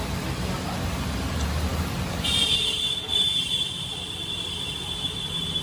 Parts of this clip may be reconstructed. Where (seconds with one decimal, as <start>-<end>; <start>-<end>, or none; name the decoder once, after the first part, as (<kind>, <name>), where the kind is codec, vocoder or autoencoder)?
0.0-5.6 (vocoder, BigVGAN v2)